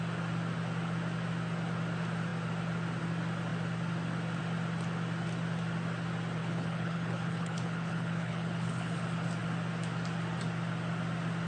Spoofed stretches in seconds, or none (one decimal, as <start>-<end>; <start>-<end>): 6.4-9.0